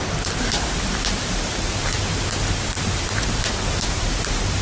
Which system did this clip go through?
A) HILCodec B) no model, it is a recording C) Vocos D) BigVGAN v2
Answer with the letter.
D